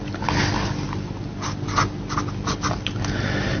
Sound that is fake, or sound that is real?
real